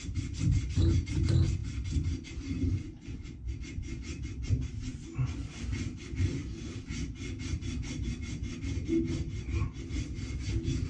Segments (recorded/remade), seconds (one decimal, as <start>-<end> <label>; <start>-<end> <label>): 0.0-10.9 recorded